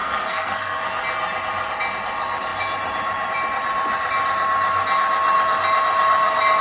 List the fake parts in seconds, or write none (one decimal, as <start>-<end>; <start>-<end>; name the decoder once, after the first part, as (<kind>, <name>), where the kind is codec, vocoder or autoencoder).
0.0-0.8 (codec, SNAC)